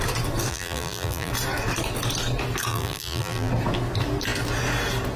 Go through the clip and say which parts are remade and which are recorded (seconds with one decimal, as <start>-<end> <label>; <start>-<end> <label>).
0.0-0.5 recorded; 0.5-1.3 remade; 1.3-2.7 recorded; 2.7-3.5 remade; 3.5-5.2 recorded